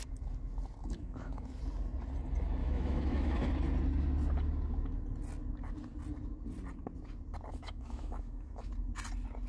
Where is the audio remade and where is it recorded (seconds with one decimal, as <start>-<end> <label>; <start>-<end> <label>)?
0.0-0.8 recorded; 0.8-1.6 remade; 1.6-2.6 recorded; 2.6-3.5 remade; 3.5-7.5 recorded; 7.5-8.7 remade; 8.7-9.5 recorded